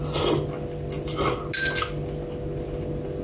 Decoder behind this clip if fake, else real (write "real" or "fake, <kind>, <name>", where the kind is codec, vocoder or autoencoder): real